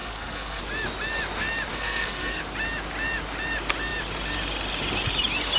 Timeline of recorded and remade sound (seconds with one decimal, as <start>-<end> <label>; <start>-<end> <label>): 0.0-0.6 remade; 0.6-1.7 recorded; 1.7-2.4 remade; 2.4-5.6 recorded